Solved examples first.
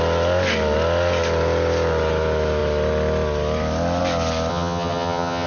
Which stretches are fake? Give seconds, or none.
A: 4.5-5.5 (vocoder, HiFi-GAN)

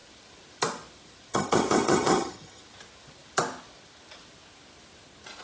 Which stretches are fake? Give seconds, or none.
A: 1.3-2.6 (vocoder, HiFi-GAN)

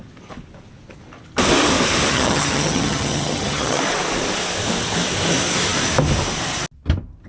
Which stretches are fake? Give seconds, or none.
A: 2.1-3.8 (vocoder, HiFi-GAN)

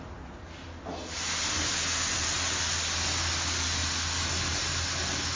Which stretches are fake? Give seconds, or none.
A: none

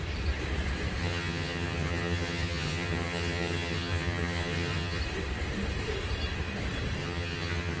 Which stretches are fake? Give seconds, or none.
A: 1.0-5.0 (vocoder, HiFi-GAN); 7.0-7.8